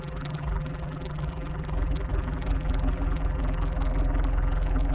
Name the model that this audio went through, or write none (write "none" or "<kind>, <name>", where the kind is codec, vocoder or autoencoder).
vocoder, BigVGAN v2